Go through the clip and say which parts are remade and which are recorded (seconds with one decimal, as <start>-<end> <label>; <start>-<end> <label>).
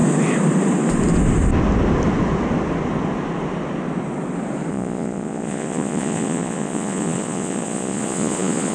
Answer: 0.0-4.7 recorded; 4.7-8.7 remade